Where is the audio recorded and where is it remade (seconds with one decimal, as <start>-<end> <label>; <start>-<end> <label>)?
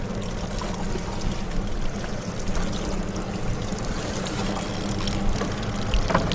0.0-3.7 recorded; 3.7-4.4 remade; 4.4-6.3 recorded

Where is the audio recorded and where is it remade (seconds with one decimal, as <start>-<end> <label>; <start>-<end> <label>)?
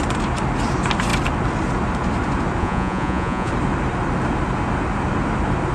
0.0-2.6 recorded; 2.6-3.5 remade; 3.5-5.7 recorded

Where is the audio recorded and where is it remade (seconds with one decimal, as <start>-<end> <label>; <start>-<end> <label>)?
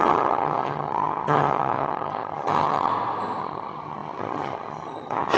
0.0-2.9 remade; 2.9-3.4 recorded; 3.4-5.4 remade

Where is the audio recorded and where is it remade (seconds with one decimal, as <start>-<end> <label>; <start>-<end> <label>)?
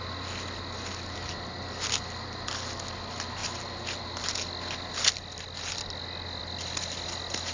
0.0-7.5 recorded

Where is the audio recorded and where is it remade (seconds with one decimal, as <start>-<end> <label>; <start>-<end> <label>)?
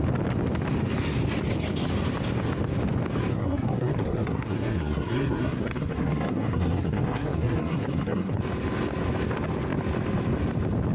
0.0-3.3 recorded; 3.3-8.4 remade; 8.4-10.9 recorded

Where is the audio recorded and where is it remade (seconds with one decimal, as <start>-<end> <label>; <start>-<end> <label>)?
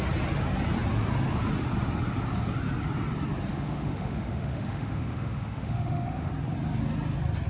0.0-3.5 recorded; 3.5-6.3 remade; 6.3-7.5 recorded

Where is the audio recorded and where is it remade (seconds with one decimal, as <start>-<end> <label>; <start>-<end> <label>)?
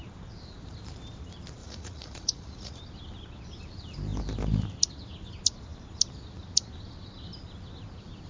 0.0-1.6 recorded; 1.6-2.8 remade; 2.8-8.3 recorded